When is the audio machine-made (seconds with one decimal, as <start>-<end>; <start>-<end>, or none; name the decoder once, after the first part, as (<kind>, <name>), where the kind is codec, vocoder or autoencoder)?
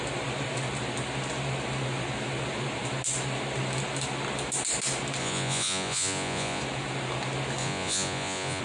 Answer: 5.2-6.6 (vocoder, Vocos); 7.6-8.6